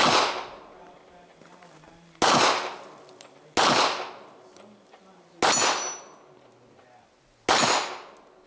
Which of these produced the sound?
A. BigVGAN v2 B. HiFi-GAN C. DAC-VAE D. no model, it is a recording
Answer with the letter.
D